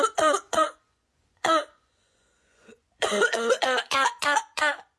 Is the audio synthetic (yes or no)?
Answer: yes